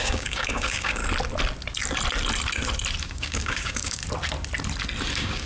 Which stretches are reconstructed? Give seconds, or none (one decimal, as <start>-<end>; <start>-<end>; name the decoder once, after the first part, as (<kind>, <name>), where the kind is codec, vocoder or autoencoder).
0.0-1.0 (codec, DAC); 3.0-4.0; 5.1-5.5